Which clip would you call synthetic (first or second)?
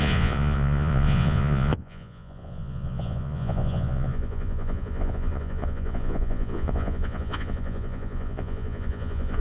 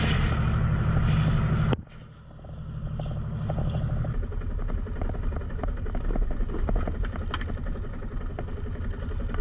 first